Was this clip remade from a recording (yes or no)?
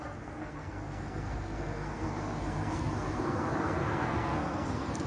yes